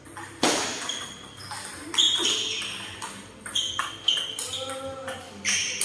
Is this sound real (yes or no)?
yes